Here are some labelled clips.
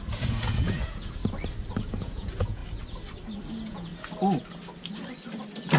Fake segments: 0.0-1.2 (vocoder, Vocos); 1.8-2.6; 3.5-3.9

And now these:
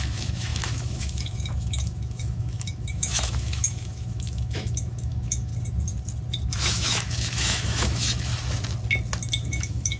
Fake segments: 0.0-5.5 (autoencoder, DAC-VAE); 6.5-8.3; 9.4-10.0

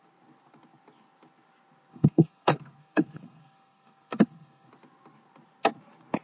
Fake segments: 1.9-4.7 (codec, SNAC)

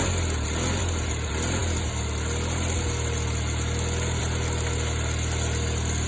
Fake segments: none

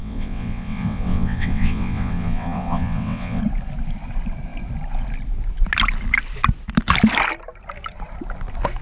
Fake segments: 0.0-3.4 (vocoder, WaveNeXt)

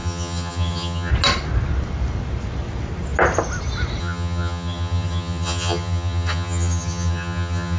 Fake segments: 0.0-1.1 (vocoder, HiFi-GAN); 4.0-7.8

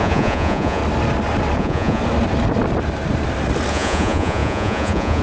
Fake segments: 0.0-0.8 (vocoder, Vocos); 1.6-2.0; 3.7-5.2

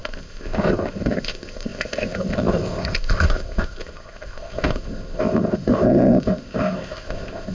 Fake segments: 0.0-7.5 (codec, ZipCodec)